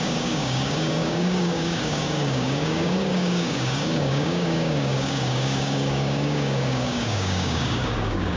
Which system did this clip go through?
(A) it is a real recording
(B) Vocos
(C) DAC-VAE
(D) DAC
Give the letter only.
D